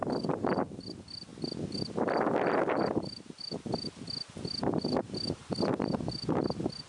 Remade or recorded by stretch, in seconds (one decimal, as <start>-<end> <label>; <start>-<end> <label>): 0.0-0.5 recorded; 0.5-1.3 remade; 1.3-2.7 recorded; 2.7-6.9 remade